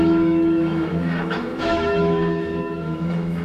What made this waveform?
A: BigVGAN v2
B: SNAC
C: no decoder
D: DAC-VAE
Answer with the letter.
D